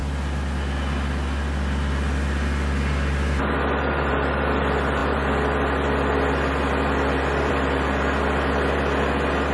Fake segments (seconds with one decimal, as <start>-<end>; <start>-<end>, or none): none